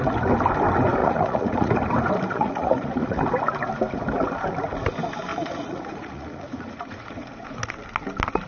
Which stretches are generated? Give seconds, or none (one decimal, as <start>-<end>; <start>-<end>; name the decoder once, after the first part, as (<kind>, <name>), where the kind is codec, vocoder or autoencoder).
1.0-1.7 (vocoder, Vocos); 2.3-3.2; 5.3-7.6